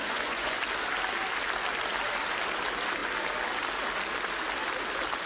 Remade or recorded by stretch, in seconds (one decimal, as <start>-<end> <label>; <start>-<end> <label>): 0.0-0.6 remade; 0.6-5.3 recorded